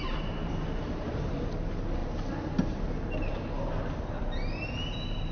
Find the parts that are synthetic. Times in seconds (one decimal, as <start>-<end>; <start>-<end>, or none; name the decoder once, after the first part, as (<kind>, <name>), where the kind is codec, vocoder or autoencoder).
none